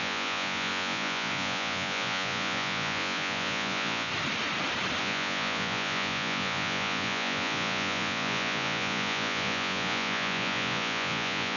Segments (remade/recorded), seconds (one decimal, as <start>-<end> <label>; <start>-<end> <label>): 0.0-4.1 remade; 4.1-5.0 recorded; 5.0-11.6 remade